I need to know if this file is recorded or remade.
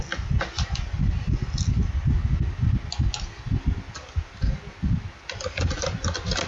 recorded